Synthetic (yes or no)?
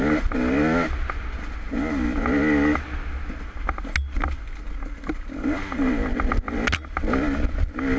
no